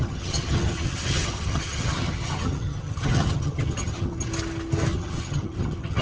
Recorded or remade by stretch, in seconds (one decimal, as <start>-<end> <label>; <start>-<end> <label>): 0.0-4.3 remade; 4.3-4.9 recorded; 4.9-6.0 remade

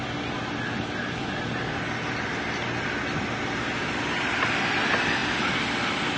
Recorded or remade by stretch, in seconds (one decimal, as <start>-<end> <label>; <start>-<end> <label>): 0.0-6.2 recorded

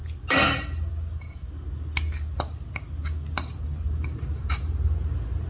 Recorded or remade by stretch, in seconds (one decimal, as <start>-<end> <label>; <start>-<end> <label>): 0.0-5.5 recorded